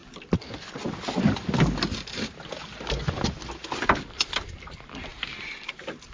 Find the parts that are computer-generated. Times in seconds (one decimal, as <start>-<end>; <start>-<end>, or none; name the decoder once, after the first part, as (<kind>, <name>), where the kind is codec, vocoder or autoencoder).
none